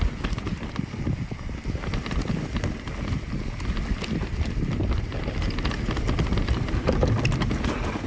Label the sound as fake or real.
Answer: real